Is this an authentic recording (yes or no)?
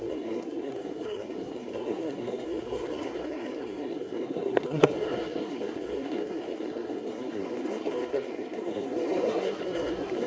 no